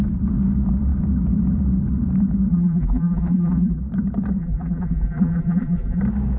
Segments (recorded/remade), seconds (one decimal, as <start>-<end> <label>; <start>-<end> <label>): 0.0-2.5 recorded; 2.5-3.8 remade; 3.8-4.4 recorded; 4.4-6.0 remade; 6.0-6.4 recorded